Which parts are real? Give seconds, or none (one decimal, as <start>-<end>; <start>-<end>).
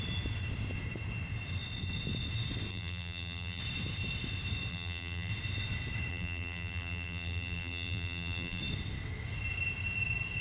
0.0-2.7; 3.6-4.7; 5.3-6.1; 8.6-10.4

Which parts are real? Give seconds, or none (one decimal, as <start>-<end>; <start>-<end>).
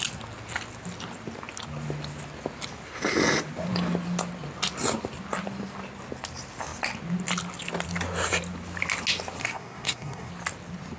0.0-9.4; 10.3-11.0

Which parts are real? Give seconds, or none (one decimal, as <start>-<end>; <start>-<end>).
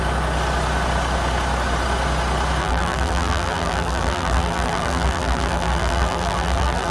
0.0-2.6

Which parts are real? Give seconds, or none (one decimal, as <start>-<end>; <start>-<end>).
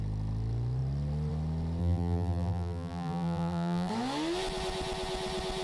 0.0-1.8; 3.9-5.6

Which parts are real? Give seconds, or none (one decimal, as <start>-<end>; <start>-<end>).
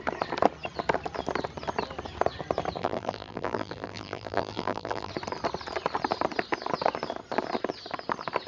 0.0-2.8; 5.1-8.5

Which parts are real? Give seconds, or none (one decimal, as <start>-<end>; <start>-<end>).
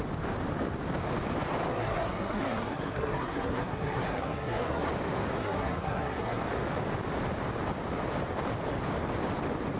0.0-1.7; 4.9-5.4; 6.4-9.8